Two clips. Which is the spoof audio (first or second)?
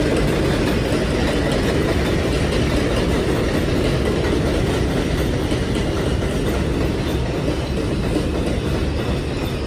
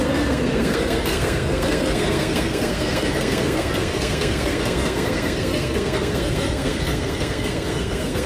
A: second